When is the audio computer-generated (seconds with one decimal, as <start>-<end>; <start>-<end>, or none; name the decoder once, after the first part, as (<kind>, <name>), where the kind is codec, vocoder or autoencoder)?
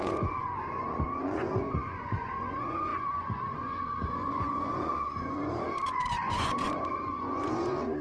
0.0-8.0 (vocoder, Vocos)